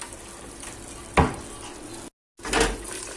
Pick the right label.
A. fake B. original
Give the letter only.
B